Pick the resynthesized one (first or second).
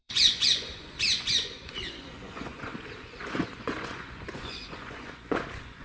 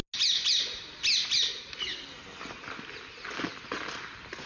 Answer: first